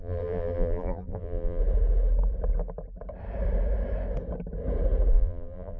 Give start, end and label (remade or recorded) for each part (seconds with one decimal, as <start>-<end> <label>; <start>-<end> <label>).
0.0-1.6 remade; 1.6-5.1 recorded; 5.1-5.8 remade